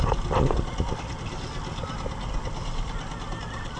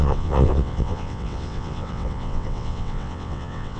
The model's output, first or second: second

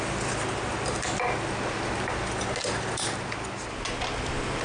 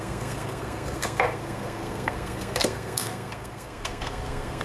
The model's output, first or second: second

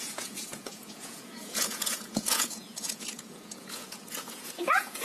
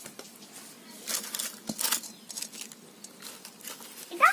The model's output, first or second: first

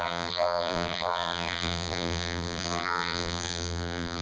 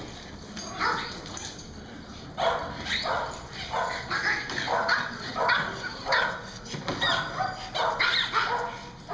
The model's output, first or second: first